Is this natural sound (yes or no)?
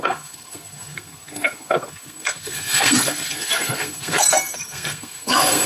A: no